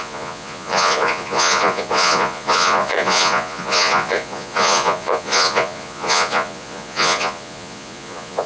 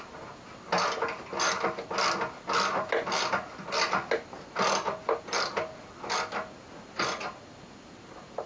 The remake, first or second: first